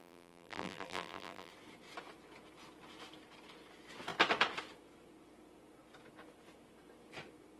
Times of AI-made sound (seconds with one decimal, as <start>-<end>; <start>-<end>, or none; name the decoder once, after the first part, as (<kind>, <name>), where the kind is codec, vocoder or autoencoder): 0.0-1.5 (vocoder, BigVGAN v2)